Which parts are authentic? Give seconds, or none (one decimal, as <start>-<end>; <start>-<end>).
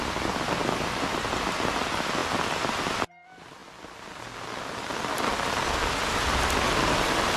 0.0-7.4